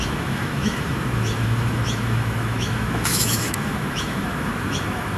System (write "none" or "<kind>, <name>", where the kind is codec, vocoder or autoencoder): autoencoder, DAC-VAE